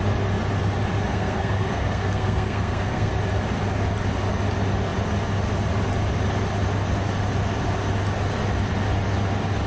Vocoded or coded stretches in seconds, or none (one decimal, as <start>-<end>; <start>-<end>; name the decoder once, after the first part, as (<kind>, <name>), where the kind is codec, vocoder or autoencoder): 1.1-3.1 (codec, SNAC)